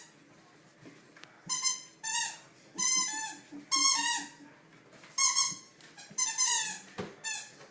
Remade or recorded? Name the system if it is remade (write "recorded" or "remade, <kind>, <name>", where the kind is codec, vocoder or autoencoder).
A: recorded